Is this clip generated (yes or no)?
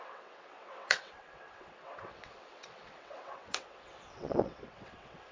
yes